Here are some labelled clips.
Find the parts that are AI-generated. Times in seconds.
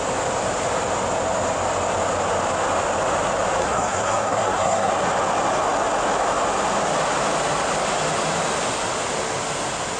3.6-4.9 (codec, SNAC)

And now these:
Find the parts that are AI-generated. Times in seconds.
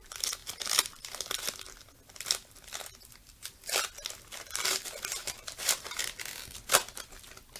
5.2-6.0 (vocoder, BigVGAN v2)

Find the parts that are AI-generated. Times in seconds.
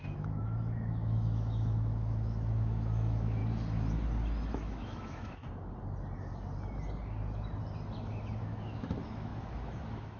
0.0-3.4 (autoencoder, DAC-VAE); 4.5-5.4; 8.4-10.2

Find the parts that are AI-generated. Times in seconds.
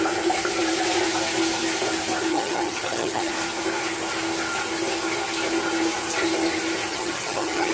2.3-3.3 (vocoder, HiFi-GAN); 6.9-7.7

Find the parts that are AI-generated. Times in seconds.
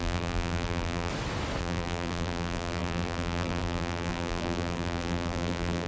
0.0-1.1 (vocoder, BigVGAN v2); 1.6-5.9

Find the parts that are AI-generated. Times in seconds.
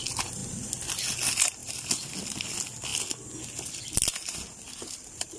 none